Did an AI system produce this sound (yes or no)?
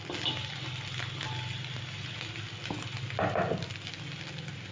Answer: no